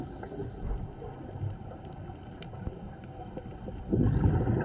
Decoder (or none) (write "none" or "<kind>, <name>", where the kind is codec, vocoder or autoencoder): none